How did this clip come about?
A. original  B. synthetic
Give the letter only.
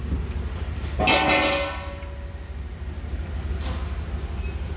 A